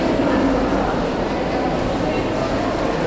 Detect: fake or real real